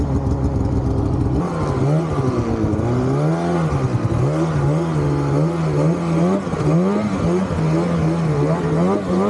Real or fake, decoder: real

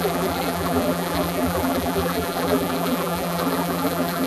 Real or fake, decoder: fake, vocoder, BigVGAN v2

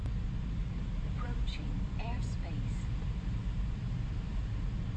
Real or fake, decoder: fake, vocoder, BigVGAN v2